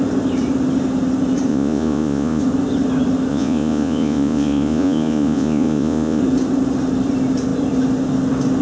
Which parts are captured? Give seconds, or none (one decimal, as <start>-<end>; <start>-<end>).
0.0-1.5; 2.4-3.3; 6.2-8.6